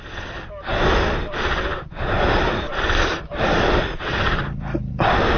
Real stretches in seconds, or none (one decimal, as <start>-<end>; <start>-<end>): 0.0-1.7; 4.9-5.4